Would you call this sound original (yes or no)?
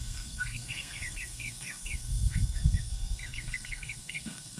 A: no